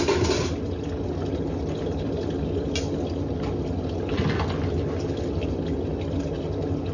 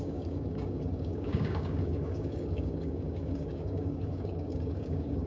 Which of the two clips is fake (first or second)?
second